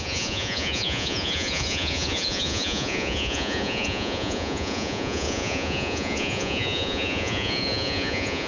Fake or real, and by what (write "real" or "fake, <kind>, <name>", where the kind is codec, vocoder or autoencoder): fake, vocoder, Vocos